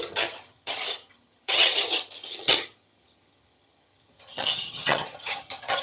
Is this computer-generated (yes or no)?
yes